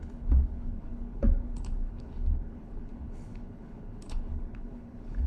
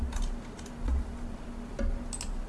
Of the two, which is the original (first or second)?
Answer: second